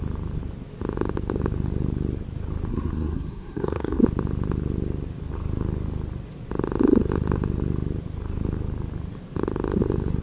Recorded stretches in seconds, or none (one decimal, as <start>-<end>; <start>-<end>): 0.0-2.7; 4.0-10.2